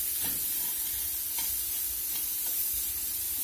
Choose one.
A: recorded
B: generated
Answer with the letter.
A